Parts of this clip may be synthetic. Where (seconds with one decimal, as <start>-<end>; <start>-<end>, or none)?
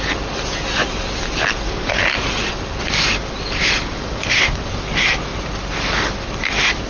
4.0-4.7